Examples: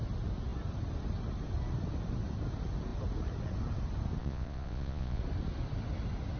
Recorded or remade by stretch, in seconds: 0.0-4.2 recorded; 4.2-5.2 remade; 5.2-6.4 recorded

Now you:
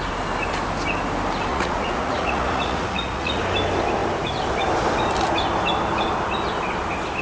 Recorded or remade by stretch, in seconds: 0.0-1.5 recorded; 1.5-3.4 remade; 3.4-7.2 recorded

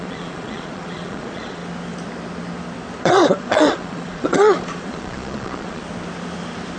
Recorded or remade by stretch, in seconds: 0.0-1.6 remade; 1.6-3.0 recorded; 3.0-5.8 remade; 5.8-6.8 recorded

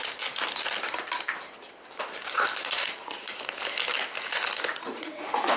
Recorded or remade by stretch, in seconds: 0.0-2.6 recorded; 2.6-3.4 remade; 3.4-4.7 recorded; 4.7-5.6 remade

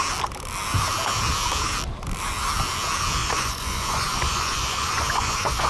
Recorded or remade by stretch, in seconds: 0.0-3.2 recorded; 3.2-5.7 remade

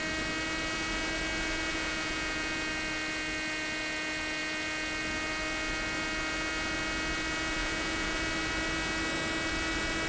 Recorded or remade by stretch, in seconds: 0.0-1.7 recorded; 1.7-2.7 remade; 2.7-7.6 recorded; 7.6-8.2 remade; 8.2-10.1 recorded

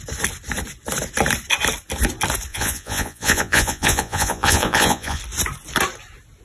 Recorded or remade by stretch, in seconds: 0.0-2.5 recorded; 2.5-5.2 remade; 5.2-6.4 recorded

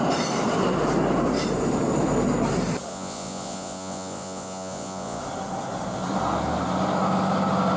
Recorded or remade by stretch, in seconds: 0.0-2.9 recorded; 2.9-5.2 remade; 5.2-7.8 recorded